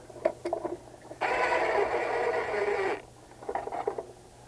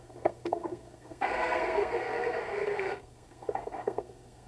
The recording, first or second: first